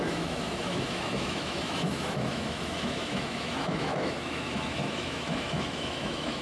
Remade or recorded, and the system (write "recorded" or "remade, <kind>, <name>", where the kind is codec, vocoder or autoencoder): remade, autoencoder, DAC-VAE